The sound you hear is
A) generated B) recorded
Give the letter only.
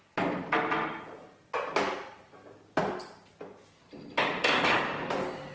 B